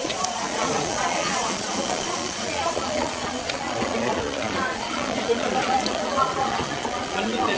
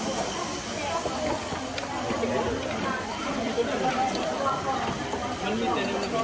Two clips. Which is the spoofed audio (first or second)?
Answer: first